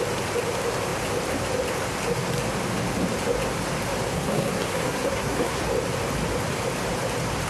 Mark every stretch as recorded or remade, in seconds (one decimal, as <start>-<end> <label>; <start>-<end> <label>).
0.0-4.1 recorded; 4.1-5.6 remade; 5.6-7.5 recorded